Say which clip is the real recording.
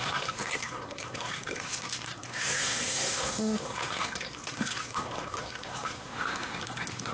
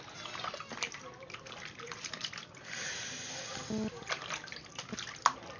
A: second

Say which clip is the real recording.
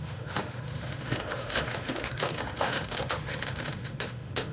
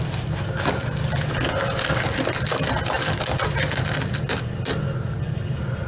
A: second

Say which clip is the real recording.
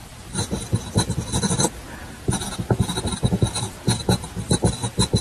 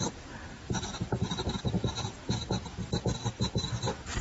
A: first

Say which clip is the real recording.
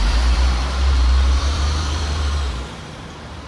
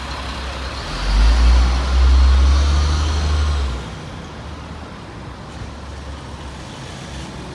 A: second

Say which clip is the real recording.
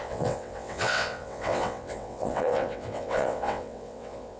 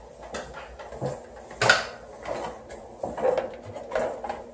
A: second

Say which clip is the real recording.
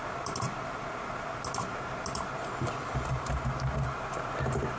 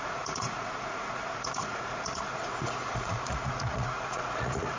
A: first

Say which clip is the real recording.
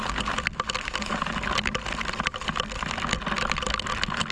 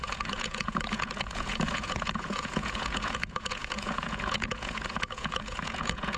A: first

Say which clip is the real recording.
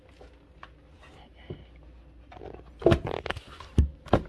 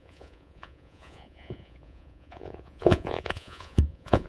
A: first